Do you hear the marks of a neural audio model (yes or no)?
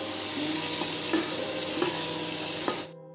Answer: no